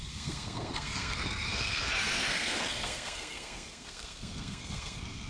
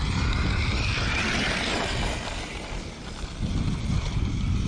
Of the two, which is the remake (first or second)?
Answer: first